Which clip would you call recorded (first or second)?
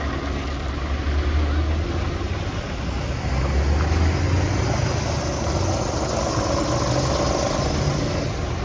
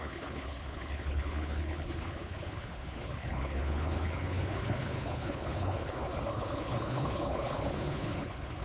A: first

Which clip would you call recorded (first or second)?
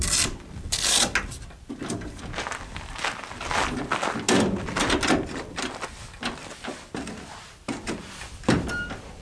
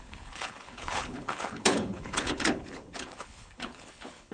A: first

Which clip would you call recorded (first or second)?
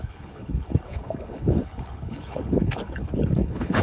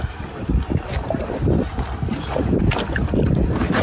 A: second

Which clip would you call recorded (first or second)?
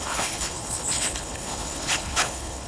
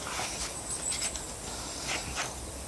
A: second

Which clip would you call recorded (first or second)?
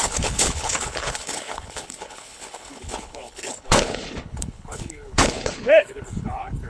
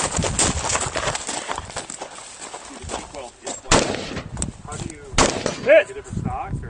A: second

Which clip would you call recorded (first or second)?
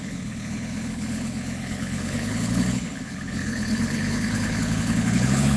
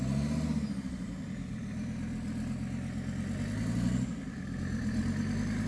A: second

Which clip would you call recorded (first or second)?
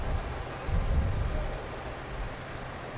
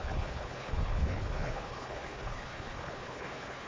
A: first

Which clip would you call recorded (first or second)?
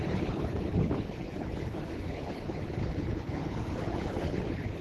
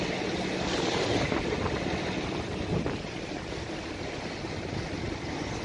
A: second